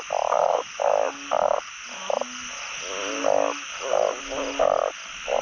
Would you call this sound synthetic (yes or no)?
no